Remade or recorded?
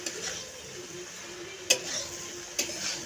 recorded